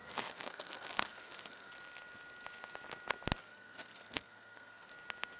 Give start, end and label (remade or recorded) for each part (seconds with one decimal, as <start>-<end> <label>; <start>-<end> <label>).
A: 0.0-1.7 remade; 1.7-3.4 recorded; 3.4-4.9 remade; 4.9-5.4 recorded